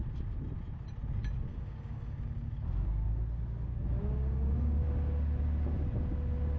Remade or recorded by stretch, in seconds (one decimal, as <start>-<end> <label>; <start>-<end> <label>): 0.0-1.5 recorded; 1.5-2.5 remade; 2.5-4.2 recorded; 4.2-4.8 remade; 4.8-6.6 recorded